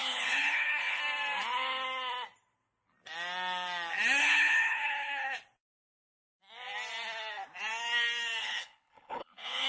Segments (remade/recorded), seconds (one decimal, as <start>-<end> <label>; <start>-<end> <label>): 0.0-1.0 remade; 1.0-4.2 recorded; 4.2-5.3 remade; 5.3-8.4 recorded; 8.4-9.7 remade